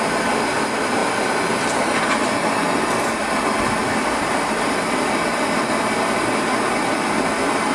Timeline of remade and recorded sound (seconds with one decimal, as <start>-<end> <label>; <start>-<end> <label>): 0.0-7.7 recorded

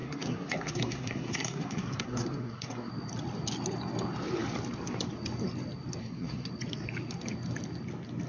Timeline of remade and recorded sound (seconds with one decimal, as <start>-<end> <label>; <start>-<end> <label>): 0.0-2.9 remade; 2.9-6.0 recorded; 6.0-6.5 remade; 6.5-8.3 recorded

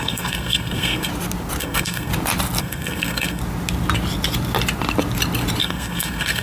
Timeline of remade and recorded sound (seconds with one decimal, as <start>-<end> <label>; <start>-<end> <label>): 0.0-1.1 remade; 1.1-1.6 recorded; 1.6-2.1 remade; 2.1-2.6 recorded; 2.6-3.4 remade; 3.4-5.6 recorded; 5.6-6.4 remade

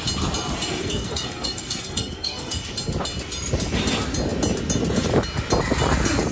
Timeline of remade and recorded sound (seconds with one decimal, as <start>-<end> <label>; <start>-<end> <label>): 0.0-0.7 recorded; 0.7-2.6 remade; 2.6-6.3 recorded

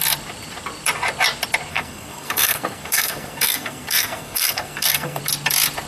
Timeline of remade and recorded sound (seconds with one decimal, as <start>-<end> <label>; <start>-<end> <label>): 0.0-1.7 recorded; 1.7-5.2 remade; 5.2-5.9 recorded

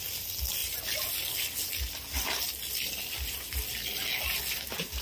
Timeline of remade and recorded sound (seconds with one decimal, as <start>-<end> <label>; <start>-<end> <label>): 0.0-5.0 recorded